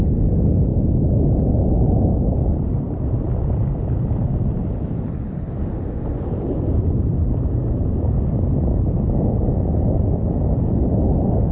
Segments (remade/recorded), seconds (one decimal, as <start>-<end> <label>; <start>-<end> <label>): 0.0-11.5 recorded